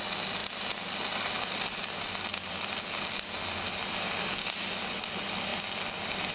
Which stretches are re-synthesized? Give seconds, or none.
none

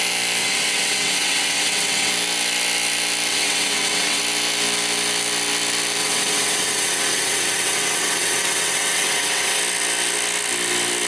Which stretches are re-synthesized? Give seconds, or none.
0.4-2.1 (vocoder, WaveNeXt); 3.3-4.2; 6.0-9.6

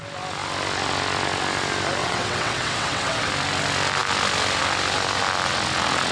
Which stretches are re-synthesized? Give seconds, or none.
2.0-3.3 (vocoder, WaveNeXt)

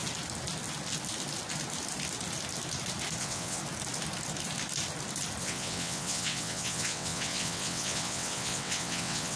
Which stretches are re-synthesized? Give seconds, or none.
3.2-3.6 (vocoder, WaveNeXt); 5.4-9.4

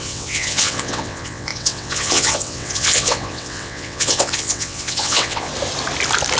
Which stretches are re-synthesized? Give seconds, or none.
0.0-5.5 (vocoder, WaveNeXt)